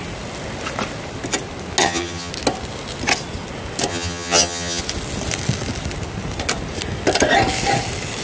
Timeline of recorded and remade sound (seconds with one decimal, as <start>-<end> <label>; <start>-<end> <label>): 0.0-1.8 recorded; 1.8-2.3 remade; 2.3-3.9 recorded; 3.9-4.8 remade; 4.8-8.2 recorded